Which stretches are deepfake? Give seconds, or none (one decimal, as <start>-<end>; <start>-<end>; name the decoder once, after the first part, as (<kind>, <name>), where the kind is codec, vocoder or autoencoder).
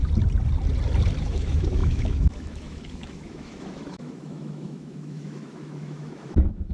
1.2-6.7 (autoencoder, DAC-VAE)